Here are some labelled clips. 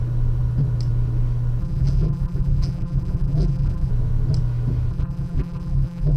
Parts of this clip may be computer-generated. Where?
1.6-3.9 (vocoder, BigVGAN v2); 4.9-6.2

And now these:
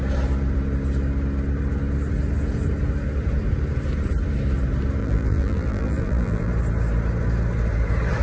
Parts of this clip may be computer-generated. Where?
5.0-6.5 (vocoder, BigVGAN v2)

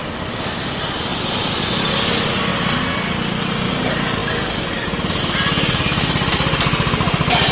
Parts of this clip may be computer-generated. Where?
none

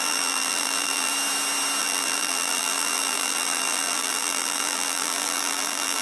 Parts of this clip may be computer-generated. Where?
0.0-1.1 (vocoder, BigVGAN v2); 1.8-6.0

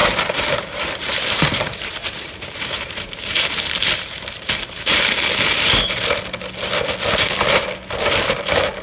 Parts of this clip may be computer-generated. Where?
0.0-5.2 (vocoder, BigVGAN v2)

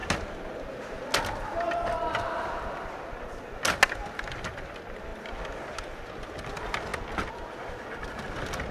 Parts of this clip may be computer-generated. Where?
none

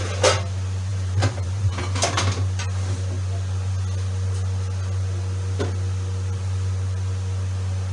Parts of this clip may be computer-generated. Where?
0.9-1.8 (vocoder, BigVGAN v2)